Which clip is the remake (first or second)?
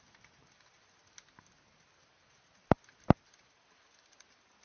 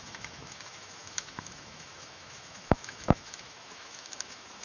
second